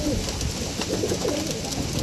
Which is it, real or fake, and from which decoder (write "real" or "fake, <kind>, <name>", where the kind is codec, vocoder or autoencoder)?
real